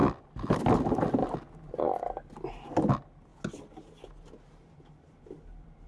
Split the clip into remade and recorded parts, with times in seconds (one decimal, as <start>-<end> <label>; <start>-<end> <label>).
0.0-5.9 recorded